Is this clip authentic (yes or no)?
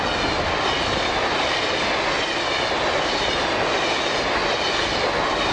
yes